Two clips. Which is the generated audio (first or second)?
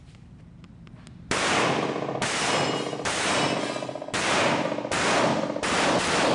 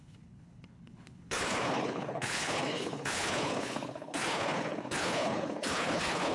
second